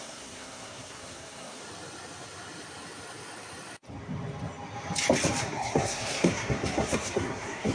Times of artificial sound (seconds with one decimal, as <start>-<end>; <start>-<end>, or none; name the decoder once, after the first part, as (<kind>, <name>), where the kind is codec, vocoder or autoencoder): 0.0-1.6 (codec, SNAC); 5.4-7.7